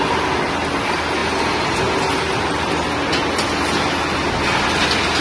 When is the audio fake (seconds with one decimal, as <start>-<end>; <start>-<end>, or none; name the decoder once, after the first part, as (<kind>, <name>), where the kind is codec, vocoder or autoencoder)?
none